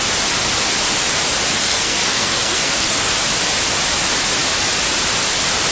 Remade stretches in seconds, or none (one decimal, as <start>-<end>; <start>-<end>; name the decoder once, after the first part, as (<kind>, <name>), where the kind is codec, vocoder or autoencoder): 1.6-3.1 (codec, SNAC)